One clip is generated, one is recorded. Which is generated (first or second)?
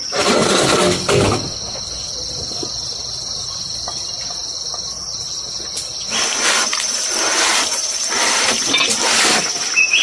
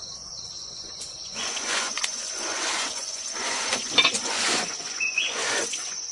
second